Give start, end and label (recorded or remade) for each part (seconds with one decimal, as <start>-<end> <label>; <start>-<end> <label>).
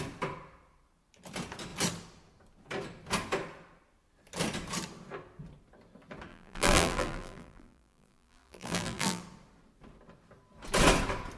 0.0-6.3 recorded; 6.3-9.2 remade; 9.2-11.4 recorded